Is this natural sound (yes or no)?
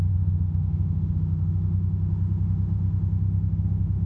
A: no